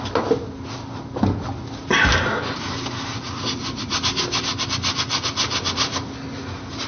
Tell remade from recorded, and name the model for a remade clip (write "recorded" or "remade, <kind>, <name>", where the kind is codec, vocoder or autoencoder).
recorded